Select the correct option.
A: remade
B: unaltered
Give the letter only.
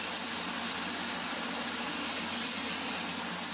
B